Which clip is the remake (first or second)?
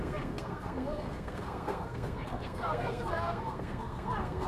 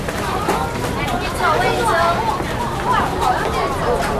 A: first